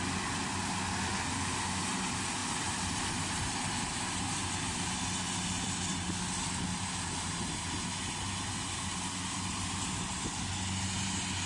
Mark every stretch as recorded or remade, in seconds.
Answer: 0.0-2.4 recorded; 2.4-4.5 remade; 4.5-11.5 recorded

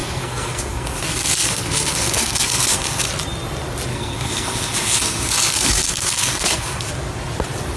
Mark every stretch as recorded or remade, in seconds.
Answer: 0.0-3.1 remade; 3.1-3.9 recorded; 3.9-6.9 remade; 6.9-7.8 recorded

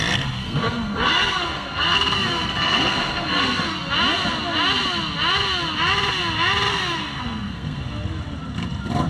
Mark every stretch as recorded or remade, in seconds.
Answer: 0.0-0.4 recorded; 0.4-3.9 remade; 3.9-6.7 recorded; 6.7-7.8 remade; 7.8-9.1 recorded

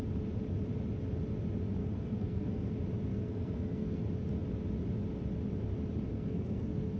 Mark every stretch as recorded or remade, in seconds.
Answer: 0.0-1.8 recorded; 1.8-2.7 remade; 2.7-3.1 recorded; 3.1-4.0 remade; 4.0-6.1 recorded; 6.1-7.0 remade

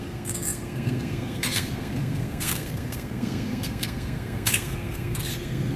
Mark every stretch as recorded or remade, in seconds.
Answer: 0.0-5.8 remade

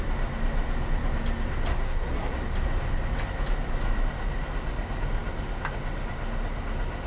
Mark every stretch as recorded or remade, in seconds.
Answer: 0.0-1.7 recorded; 1.7-2.3 remade; 2.3-7.1 recorded

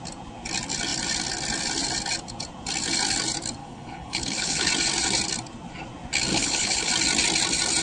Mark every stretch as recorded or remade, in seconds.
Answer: 0.0-3.6 recorded; 3.6-4.7 remade; 4.7-6.3 recorded; 6.3-6.9 remade; 6.9-7.8 recorded

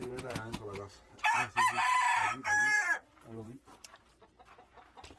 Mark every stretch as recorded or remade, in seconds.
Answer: 0.0-5.2 remade